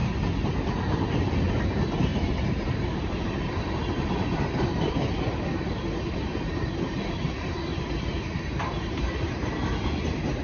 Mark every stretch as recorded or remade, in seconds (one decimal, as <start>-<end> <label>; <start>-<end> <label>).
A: 0.0-1.2 recorded; 1.2-10.4 remade